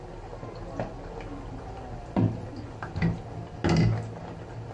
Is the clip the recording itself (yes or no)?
yes